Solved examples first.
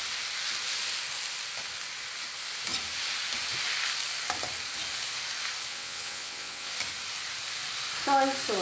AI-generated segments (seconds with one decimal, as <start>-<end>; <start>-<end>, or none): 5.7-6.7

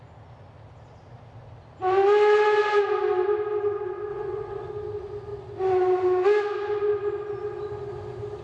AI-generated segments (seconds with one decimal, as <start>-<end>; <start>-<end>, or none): 4.1-4.7

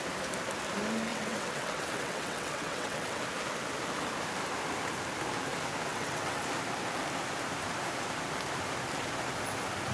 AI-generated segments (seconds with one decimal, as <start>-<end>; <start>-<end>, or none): 1.1-3.2; 5.9-6.4

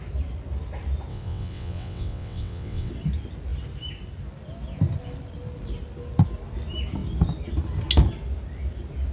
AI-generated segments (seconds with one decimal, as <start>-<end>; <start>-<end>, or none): 1.1-2.9

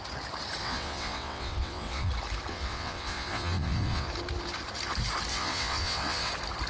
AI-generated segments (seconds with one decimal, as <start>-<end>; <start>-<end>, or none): 0.6-2.1; 2.5-4.1; 5.3-6.3